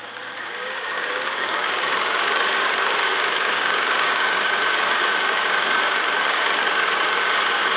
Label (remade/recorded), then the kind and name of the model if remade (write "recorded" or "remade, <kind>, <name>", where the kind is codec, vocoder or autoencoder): remade, codec, DAC